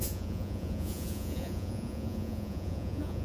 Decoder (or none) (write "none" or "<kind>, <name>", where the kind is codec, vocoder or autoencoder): vocoder, Vocos